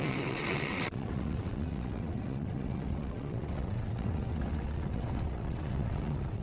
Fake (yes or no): yes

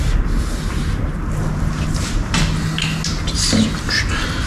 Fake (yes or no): no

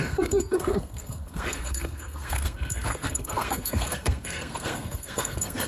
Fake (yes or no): yes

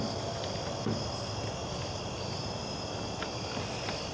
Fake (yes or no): no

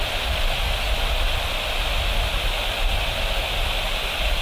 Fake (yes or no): no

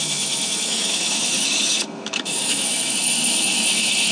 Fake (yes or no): yes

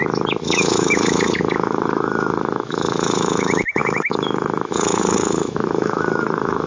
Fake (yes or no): yes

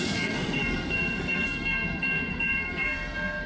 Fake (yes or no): yes